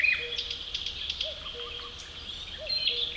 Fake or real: real